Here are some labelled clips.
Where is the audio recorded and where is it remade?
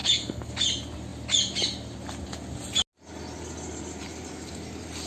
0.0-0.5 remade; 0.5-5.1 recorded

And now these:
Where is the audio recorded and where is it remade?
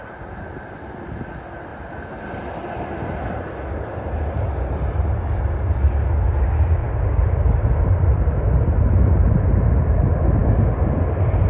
0.0-6.8 recorded; 6.8-8.4 remade; 8.4-11.5 recorded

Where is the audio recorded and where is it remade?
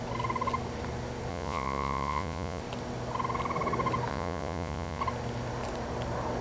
0.0-1.3 recorded; 1.3-2.6 remade; 2.6-4.1 recorded; 4.1-5.0 remade; 5.0-6.4 recorded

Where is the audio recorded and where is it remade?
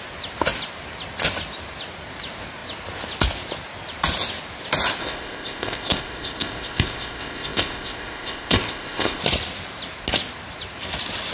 0.0-5.0 recorded; 5.0-9.2 remade; 9.2-11.3 recorded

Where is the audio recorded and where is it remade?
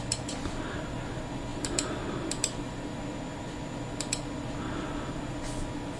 0.0-6.0 recorded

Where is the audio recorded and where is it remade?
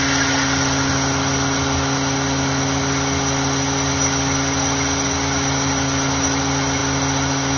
0.0-7.6 recorded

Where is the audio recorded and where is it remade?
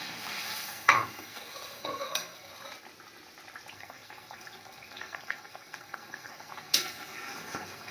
0.0-2.5 remade; 2.5-3.7 recorded; 3.7-7.9 remade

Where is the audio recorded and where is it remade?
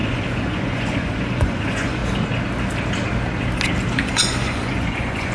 0.0-2.0 remade; 2.0-4.0 recorded; 4.0-5.3 remade